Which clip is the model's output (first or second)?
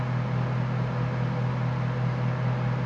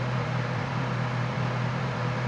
second